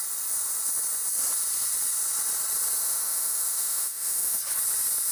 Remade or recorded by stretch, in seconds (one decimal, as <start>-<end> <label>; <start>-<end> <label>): 0.0-2.8 recorded; 2.8-4.4 remade; 4.4-5.1 recorded